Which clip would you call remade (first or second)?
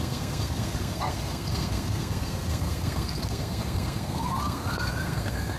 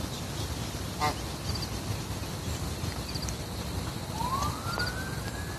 first